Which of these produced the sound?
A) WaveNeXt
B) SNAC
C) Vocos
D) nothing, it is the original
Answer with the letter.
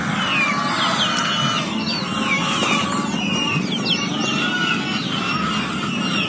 D